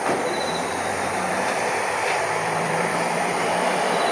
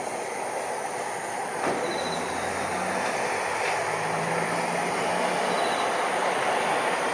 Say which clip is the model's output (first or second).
first